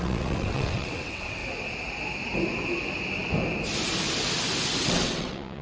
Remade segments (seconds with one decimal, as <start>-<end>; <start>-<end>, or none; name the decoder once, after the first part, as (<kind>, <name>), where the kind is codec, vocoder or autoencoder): 0.0-1.4 (vocoder, WaveNeXt); 4.8-5.6